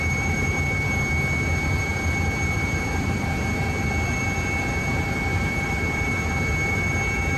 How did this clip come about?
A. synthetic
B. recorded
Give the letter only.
A